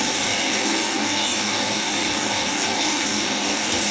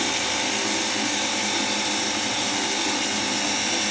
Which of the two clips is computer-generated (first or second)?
first